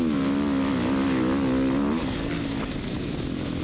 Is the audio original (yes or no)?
yes